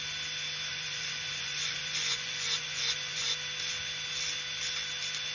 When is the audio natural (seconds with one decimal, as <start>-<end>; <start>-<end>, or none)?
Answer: 0.0-0.7; 3.3-5.3